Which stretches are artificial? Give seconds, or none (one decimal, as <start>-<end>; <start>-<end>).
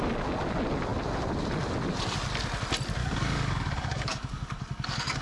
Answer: 3.0-5.2